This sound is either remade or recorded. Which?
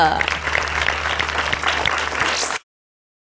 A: recorded